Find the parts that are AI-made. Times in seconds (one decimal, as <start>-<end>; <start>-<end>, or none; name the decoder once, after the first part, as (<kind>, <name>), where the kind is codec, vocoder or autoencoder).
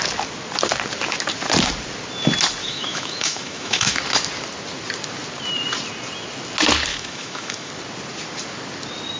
2.6-4.0 (autoencoder, DAC-VAE); 6.9-7.7